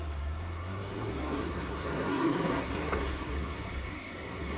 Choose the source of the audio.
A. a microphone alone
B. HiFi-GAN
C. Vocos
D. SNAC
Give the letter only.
D